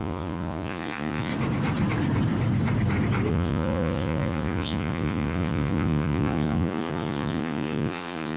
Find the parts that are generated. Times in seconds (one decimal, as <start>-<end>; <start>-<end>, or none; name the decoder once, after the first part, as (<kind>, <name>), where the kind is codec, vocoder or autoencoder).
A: 0.0-1.3 (vocoder, Vocos); 3.3-8.4